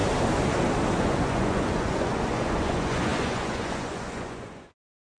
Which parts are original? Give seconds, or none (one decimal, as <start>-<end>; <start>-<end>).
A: 0.0-1.0